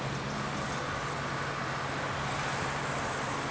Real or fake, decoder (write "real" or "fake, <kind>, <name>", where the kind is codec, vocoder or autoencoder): real